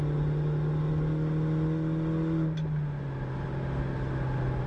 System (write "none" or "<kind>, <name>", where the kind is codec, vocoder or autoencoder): none